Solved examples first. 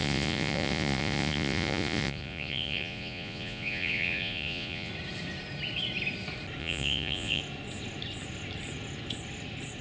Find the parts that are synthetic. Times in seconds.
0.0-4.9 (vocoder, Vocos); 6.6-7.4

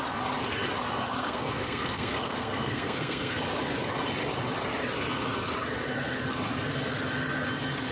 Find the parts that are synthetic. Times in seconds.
1.2-3.4 (codec, SNAC)

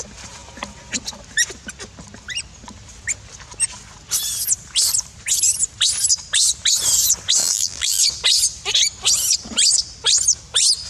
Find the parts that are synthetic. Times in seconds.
7.4-8.0 (vocoder, BigVGAN v2)